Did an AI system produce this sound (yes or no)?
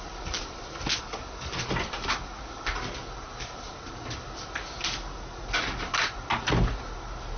no